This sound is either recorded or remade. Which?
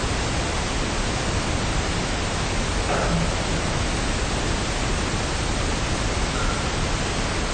recorded